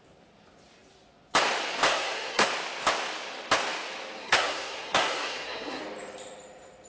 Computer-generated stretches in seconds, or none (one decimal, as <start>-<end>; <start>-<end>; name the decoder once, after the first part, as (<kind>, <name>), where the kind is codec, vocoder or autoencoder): 1.9-2.5 (codec, SNAC); 4.2-5.8